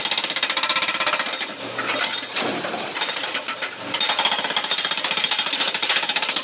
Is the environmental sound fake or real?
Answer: real